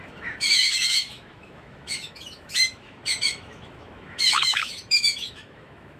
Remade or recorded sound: remade